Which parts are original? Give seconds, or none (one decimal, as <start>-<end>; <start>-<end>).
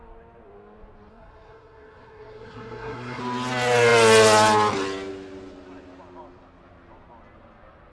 0.0-1.1; 3.2-7.9